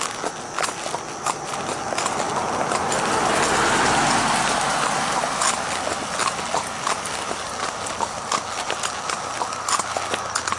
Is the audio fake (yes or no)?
no